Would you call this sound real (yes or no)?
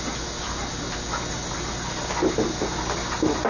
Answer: yes